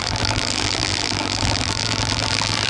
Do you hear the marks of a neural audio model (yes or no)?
yes